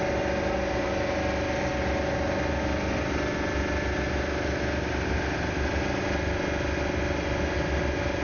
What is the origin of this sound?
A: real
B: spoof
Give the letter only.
A